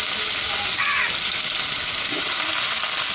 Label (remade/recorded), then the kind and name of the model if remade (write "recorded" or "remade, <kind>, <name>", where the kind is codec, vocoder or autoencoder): recorded